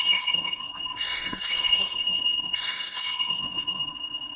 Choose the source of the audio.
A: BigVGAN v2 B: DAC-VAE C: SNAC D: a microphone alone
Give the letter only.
C